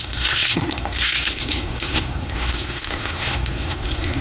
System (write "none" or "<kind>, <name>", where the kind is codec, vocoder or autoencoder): codec, SNAC